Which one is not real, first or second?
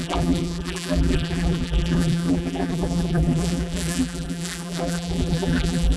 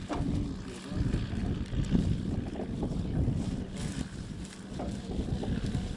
first